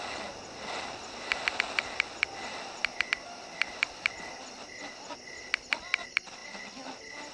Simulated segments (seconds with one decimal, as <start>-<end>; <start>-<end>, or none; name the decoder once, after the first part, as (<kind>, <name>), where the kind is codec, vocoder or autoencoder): none

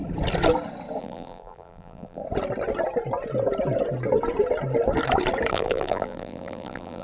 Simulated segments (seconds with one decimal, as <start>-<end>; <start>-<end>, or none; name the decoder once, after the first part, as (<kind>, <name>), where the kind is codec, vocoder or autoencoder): 1.0-2.2 (vocoder, BigVGAN v2); 5.5-7.0

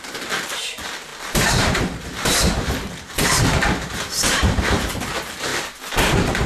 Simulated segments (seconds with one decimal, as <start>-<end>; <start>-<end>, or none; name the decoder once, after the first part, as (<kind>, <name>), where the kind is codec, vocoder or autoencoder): 0.0-5.5 (vocoder, BigVGAN v2); 6.1-6.5

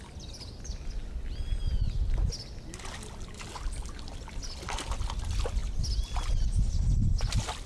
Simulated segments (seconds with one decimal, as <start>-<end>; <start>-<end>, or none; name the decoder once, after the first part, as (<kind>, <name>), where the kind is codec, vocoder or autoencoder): none

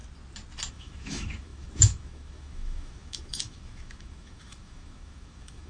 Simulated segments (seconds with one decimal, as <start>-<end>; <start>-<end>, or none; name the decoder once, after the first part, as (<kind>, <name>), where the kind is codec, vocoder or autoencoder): 0.7-5.7 (autoencoder, DAC-VAE)